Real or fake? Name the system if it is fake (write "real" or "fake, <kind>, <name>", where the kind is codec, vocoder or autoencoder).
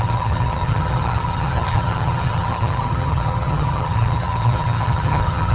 fake, vocoder, HiFi-GAN